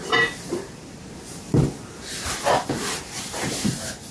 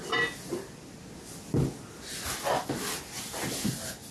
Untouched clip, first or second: second